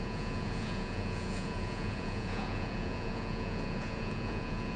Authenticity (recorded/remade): remade